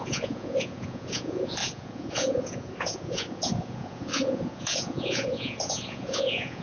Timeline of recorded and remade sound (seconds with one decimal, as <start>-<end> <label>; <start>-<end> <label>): 0.0-6.6 remade